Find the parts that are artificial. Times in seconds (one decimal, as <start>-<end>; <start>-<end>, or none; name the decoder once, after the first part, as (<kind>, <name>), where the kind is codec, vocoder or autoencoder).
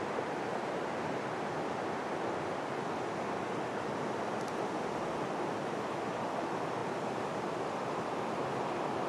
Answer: none